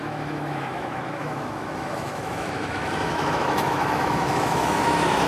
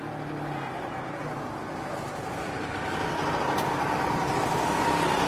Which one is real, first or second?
second